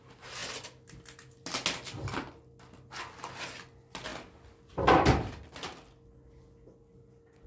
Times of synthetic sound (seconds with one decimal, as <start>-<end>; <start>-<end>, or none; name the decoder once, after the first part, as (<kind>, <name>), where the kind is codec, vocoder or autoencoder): none